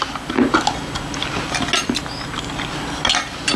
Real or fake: real